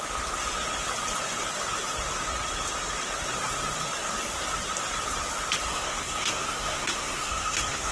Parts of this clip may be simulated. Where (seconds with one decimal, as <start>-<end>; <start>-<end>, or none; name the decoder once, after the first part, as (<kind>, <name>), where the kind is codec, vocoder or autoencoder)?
5.7-7.9 (codec, SNAC)